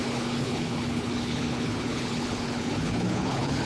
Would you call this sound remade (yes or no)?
yes